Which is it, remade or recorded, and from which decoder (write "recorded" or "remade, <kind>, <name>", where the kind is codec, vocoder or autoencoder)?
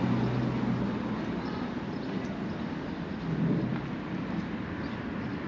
recorded